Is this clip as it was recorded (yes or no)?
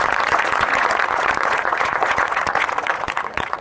no